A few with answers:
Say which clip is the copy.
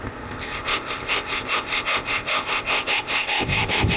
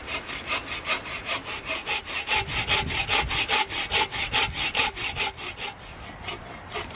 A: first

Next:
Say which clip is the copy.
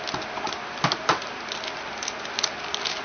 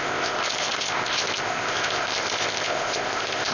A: second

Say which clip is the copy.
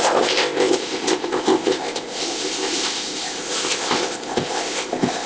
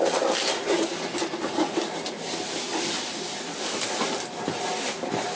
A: first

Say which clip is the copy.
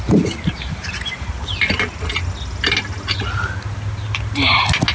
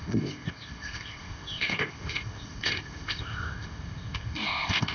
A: second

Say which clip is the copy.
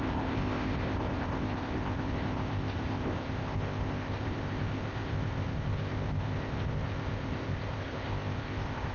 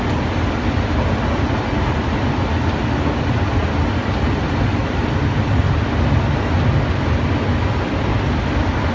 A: first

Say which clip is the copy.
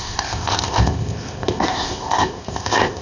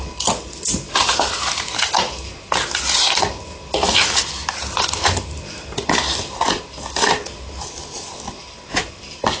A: first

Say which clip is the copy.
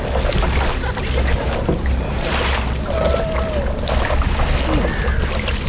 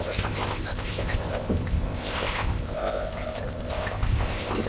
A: second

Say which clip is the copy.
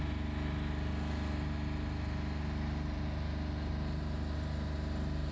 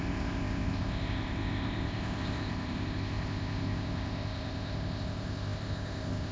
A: second